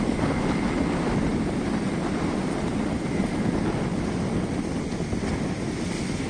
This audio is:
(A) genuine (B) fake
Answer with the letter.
A